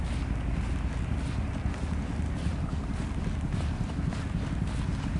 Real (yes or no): yes